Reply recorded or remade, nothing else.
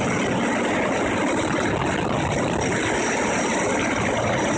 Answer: recorded